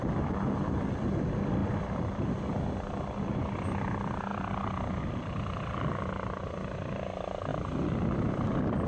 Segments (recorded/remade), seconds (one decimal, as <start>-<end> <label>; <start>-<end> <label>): 0.0-8.9 recorded